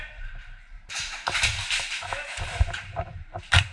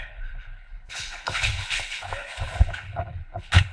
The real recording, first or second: first